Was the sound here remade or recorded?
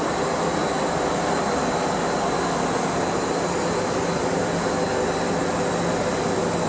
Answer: recorded